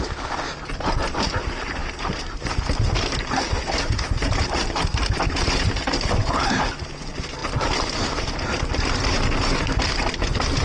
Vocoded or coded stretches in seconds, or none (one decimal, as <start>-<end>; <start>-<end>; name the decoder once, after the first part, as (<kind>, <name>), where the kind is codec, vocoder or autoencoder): none

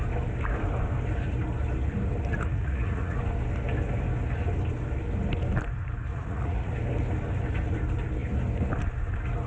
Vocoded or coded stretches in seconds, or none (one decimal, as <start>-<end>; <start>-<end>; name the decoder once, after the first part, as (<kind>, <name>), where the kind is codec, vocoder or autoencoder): 2.3-3.2 (vocoder, Vocos); 6.1-6.7